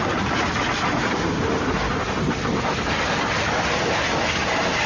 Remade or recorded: recorded